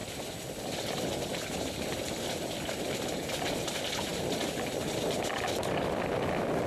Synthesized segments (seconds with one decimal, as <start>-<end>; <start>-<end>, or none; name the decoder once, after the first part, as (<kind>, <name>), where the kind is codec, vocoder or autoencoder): 0.0-0.6 (vocoder, BigVGAN v2); 1.3-2.0; 4.1-6.1